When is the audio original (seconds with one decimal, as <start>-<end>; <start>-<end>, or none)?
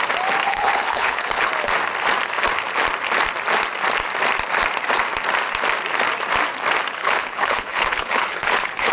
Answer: 0.0-0.4; 1.5-7.0